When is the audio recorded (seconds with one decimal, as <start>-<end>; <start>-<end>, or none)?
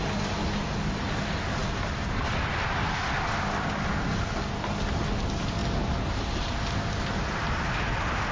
0.0-8.3